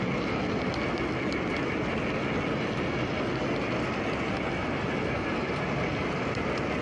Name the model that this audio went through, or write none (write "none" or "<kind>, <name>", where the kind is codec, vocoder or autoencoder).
none